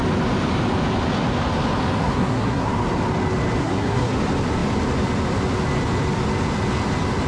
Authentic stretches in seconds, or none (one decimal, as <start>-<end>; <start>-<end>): 0.0-2.0; 2.7-3.6; 4.1-7.3